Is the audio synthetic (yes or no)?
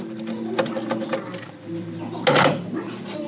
no